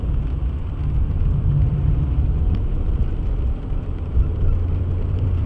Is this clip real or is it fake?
fake